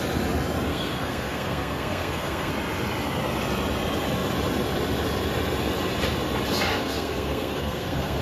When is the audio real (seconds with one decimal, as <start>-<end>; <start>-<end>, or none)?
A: 0.0-0.7; 2.5-6.7